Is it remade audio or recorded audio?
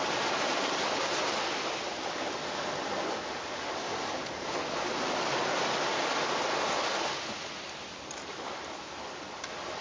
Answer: recorded